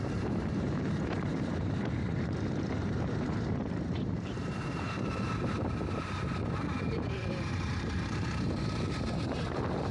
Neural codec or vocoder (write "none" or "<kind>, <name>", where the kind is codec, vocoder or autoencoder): vocoder, BigVGAN v2